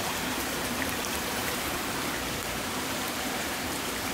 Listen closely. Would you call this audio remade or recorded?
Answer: remade